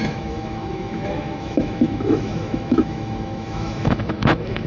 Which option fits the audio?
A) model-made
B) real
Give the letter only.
A